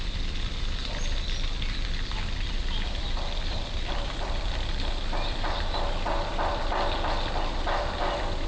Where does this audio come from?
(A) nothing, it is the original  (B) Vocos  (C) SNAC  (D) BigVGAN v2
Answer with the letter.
D